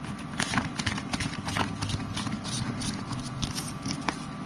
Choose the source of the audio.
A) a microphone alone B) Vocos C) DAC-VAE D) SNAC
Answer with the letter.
A